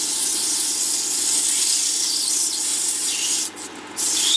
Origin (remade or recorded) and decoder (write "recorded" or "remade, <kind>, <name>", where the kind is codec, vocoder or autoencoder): recorded